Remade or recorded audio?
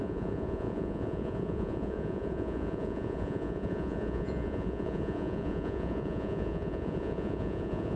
remade